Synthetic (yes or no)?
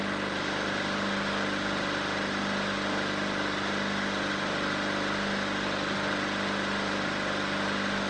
no